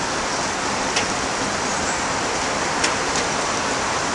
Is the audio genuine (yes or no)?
yes